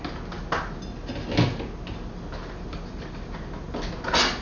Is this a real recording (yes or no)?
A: yes